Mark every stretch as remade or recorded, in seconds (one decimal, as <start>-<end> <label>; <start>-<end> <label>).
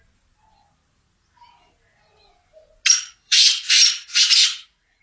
0.0-3.1 recorded; 3.1-5.0 remade